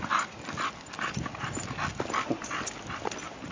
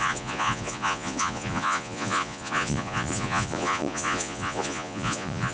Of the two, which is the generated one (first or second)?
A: second